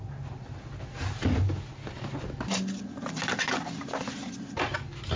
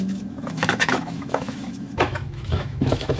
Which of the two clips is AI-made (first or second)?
second